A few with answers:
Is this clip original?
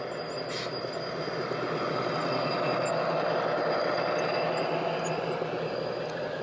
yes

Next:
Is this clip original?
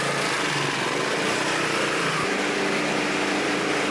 yes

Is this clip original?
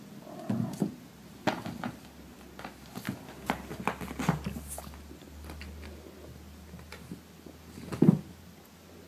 yes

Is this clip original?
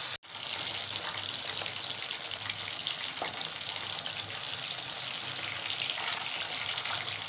yes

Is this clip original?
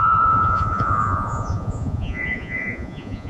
no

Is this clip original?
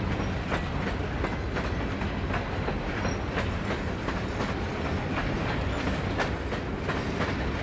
yes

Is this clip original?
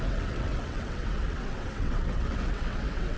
no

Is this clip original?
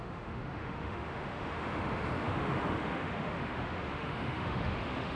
no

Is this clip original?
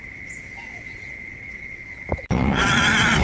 no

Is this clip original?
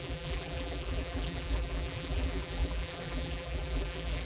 no